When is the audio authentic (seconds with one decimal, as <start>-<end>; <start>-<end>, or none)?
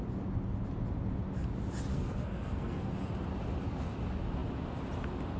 0.0-1.9; 2.9-5.4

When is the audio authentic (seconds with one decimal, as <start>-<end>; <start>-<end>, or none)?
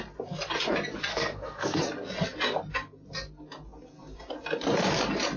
0.0-1.1; 1.8-5.4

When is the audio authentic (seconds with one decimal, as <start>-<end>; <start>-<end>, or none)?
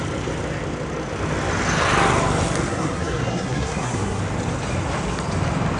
0.0-2.7; 4.2-5.8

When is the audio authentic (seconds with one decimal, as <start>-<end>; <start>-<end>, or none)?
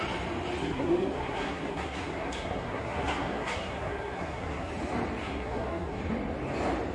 0.0-0.6; 4.7-5.2; 6.0-6.9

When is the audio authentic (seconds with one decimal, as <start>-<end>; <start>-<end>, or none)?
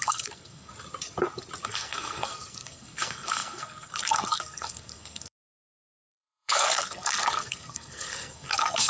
0.7-1.6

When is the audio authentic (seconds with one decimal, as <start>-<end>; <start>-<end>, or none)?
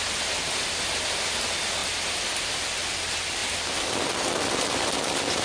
0.0-5.4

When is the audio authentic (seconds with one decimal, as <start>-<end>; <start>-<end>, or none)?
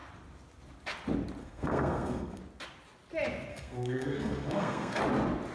0.0-1.4; 2.4-3.5; 5.0-5.5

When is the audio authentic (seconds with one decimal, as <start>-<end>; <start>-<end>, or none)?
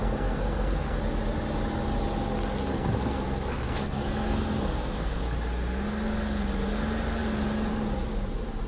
1.0-2.7; 5.2-8.7